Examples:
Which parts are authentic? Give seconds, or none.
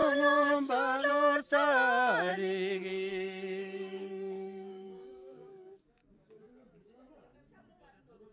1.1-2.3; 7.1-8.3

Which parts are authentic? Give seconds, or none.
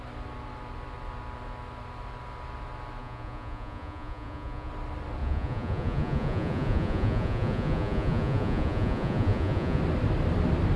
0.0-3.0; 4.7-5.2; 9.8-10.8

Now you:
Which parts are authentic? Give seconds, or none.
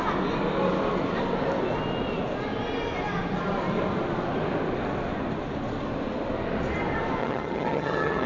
0.0-7.2